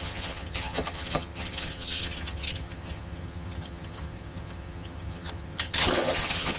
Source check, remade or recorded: remade